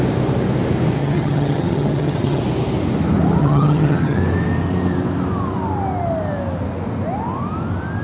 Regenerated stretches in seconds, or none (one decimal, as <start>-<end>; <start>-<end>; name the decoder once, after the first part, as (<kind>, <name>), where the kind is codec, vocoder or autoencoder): 1.0-2.4 (vocoder, HiFi-GAN); 3.4-4.2